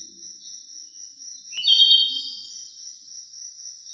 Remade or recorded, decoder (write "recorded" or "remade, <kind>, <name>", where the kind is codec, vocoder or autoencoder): recorded